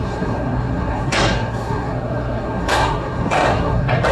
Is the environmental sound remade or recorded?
remade